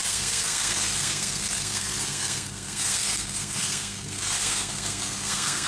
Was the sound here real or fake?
fake